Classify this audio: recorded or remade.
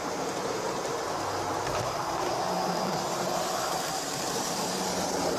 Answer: remade